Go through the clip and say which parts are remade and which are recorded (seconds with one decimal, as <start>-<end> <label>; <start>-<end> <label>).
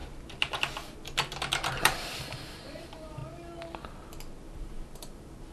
0.0-1.7 recorded; 1.7-3.2 remade; 3.2-4.5 recorded; 4.5-5.5 remade